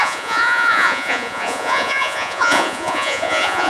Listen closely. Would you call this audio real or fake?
fake